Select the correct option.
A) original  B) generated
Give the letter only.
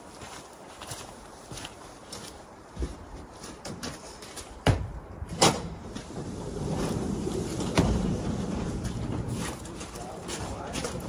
B